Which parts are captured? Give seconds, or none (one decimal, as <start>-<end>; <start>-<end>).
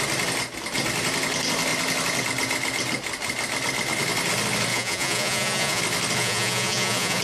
0.0-4.7; 5.8-6.2